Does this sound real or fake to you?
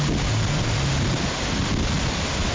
real